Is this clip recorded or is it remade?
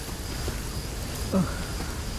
recorded